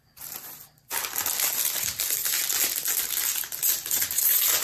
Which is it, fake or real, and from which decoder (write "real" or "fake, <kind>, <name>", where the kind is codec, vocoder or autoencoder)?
real